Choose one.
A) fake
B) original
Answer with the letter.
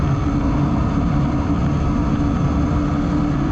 B